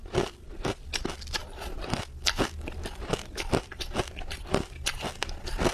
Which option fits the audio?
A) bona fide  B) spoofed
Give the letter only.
A